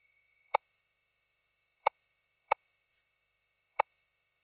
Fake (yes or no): yes